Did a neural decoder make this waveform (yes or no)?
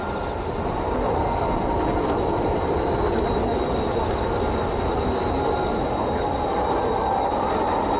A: no